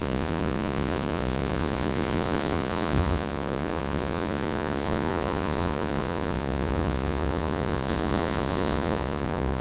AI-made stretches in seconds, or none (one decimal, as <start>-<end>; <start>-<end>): 0.0-9.6